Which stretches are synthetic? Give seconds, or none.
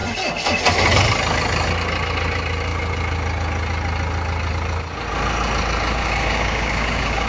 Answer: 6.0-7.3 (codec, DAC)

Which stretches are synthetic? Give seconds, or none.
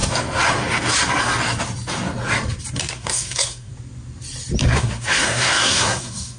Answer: 2.8-3.7 (codec, SNAC); 4.6-6.4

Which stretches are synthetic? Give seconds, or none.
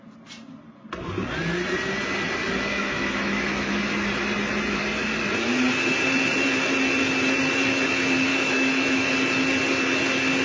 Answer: 2.7-3.7 (autoencoder, DAC-VAE); 8.3-9.1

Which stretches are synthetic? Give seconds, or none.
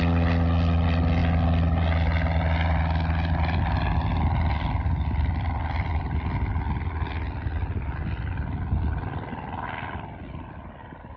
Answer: none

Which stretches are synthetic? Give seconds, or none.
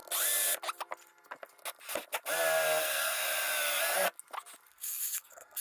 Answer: 2.8-3.2 (codec, SNAC); 4.7-5.6